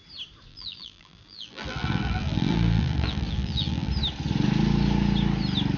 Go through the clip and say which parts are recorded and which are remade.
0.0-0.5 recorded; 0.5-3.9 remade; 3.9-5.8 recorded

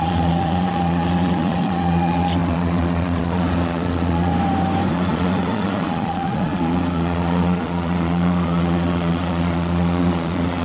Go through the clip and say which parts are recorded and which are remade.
0.0-4.3 remade; 4.3-4.9 recorded; 4.9-10.6 remade